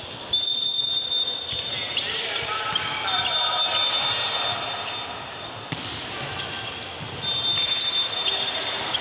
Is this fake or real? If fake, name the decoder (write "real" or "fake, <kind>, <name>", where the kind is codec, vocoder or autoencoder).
real